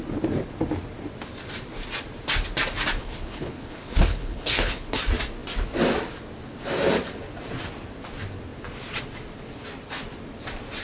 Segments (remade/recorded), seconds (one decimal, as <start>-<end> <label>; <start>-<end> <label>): 0.0-3.0 recorded; 3.0-5.0 remade; 5.0-10.8 recorded